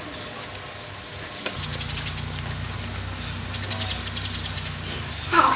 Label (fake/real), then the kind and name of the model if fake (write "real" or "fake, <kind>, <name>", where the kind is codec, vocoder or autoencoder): real